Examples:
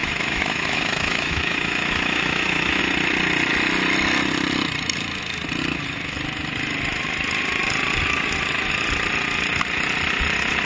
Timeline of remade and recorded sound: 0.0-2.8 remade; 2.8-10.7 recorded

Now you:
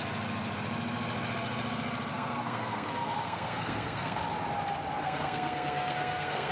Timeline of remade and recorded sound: 0.0-2.1 recorded; 2.1-4.2 remade; 4.2-5.0 recorded; 5.0-6.5 remade

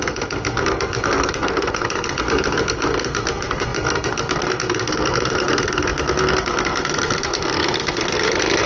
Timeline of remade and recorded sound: 0.0-8.7 remade

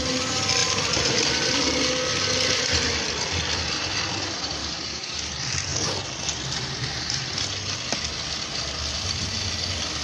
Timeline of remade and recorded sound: 0.0-4.6 recorded; 4.6-5.3 remade; 5.3-10.0 recorded

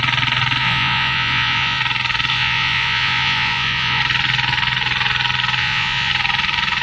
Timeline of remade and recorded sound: 0.0-0.6 recorded; 0.6-1.8 remade; 1.8-2.3 recorded; 2.3-4.0 remade; 4.0-5.6 recorded; 5.6-6.1 remade; 6.1-6.8 recorded